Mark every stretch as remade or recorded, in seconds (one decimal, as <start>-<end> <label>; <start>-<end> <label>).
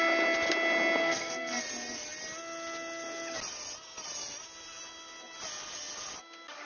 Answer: 0.0-1.0 recorded; 1.0-1.6 remade; 1.6-6.7 recorded